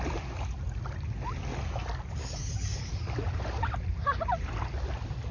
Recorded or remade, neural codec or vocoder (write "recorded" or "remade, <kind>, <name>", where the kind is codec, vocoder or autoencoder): recorded